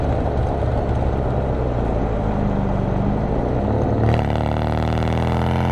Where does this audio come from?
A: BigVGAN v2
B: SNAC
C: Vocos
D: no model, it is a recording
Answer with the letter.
D